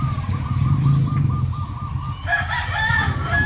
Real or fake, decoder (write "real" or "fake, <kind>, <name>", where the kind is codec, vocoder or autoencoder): real